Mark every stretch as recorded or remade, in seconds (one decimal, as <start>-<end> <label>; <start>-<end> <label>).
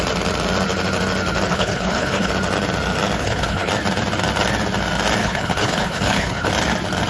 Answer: 0.0-1.5 recorded; 1.5-2.3 remade; 2.3-3.2 recorded; 3.2-3.7 remade; 3.7-5.2 recorded; 5.2-6.5 remade; 6.5-7.1 recorded